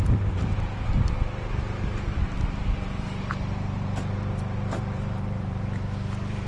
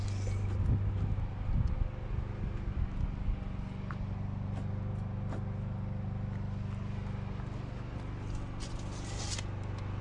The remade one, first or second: first